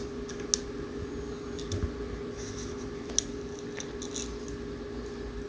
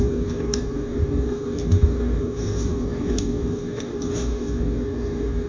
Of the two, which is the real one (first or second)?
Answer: first